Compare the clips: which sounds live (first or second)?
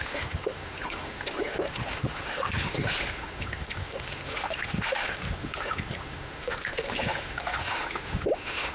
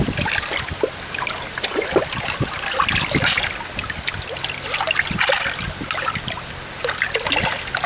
second